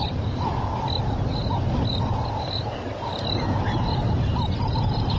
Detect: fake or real real